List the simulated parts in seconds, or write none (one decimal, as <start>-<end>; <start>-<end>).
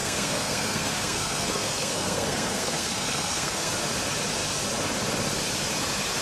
0.0-3.7